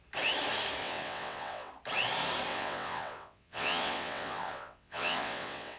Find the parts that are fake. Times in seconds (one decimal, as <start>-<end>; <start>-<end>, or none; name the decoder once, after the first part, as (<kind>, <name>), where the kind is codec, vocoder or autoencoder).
0.8-1.7 (vocoder, WaveNeXt); 2.5-5.8